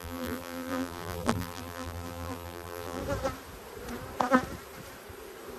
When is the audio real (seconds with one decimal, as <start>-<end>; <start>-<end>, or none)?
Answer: 3.0-5.6